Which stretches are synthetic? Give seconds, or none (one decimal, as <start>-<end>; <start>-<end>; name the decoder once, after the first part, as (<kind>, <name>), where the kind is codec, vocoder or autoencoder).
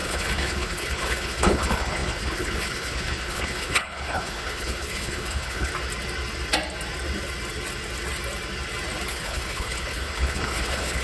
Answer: 0.0-5.7 (codec, HILCodec); 9.1-11.0